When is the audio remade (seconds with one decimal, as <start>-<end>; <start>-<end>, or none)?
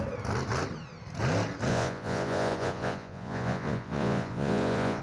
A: 1.7-5.0